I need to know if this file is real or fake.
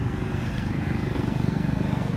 fake